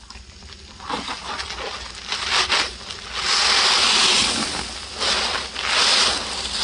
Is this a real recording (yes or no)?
yes